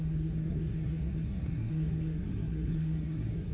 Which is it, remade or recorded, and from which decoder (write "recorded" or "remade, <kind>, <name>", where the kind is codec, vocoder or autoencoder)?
remade, codec, SNAC